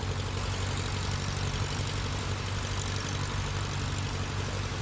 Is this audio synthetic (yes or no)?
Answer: no